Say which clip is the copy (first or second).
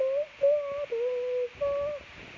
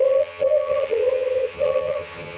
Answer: second